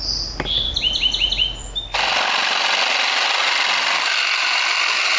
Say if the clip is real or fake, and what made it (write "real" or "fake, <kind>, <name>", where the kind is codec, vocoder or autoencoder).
real